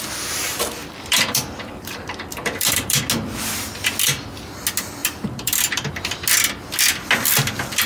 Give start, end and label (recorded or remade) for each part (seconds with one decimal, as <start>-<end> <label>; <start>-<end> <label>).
0.0-0.8 recorded; 0.8-3.0 remade; 3.0-5.0 recorded; 5.0-5.9 remade; 5.9-7.9 recorded

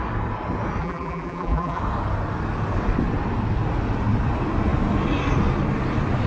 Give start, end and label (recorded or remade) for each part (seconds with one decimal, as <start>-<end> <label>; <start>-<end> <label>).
0.0-0.8 recorded; 0.8-1.8 remade; 1.8-6.3 recorded

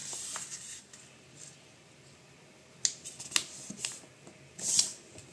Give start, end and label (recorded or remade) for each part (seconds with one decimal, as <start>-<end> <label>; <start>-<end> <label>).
0.0-5.3 recorded

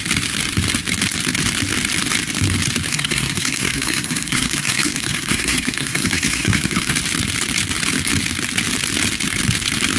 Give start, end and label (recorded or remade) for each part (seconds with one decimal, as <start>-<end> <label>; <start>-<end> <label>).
0.0-2.9 recorded; 2.9-6.9 remade; 6.9-10.0 recorded

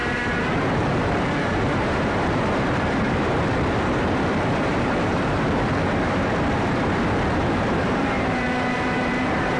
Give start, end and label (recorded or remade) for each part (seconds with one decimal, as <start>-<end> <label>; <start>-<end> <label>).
0.0-9.6 remade

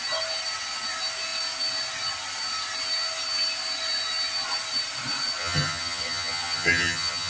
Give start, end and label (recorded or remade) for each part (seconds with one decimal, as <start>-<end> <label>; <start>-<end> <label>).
0.0-5.4 recorded; 5.4-7.3 remade

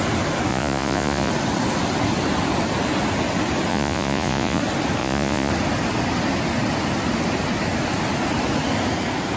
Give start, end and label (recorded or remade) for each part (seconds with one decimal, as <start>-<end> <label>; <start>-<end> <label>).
0.0-0.5 recorded; 0.5-1.3 remade; 1.3-3.7 recorded; 3.7-4.6 remade; 4.6-5.0 recorded; 5.0-5.5 remade; 5.5-9.4 recorded

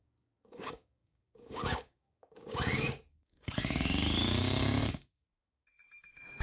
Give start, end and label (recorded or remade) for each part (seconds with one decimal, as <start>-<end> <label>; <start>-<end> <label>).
0.0-6.4 remade